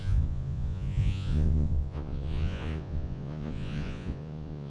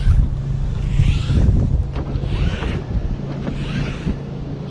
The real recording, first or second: second